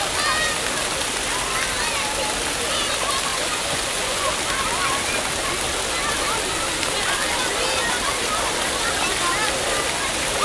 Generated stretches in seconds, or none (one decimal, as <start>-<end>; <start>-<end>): 3.3-4.3